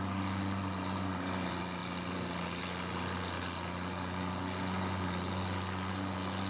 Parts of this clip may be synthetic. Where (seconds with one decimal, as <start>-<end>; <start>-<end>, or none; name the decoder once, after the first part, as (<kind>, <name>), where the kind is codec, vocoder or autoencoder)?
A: none